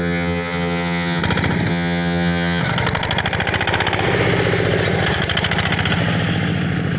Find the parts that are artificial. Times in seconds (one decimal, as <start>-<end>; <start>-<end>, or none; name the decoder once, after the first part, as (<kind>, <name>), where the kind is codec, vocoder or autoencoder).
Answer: 0.0-1.2 (vocoder, HiFi-GAN); 1.7-2.6